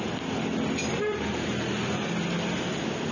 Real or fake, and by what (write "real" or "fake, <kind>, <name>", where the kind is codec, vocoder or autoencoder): real